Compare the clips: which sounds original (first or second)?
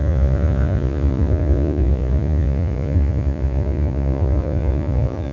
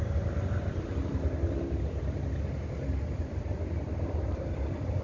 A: second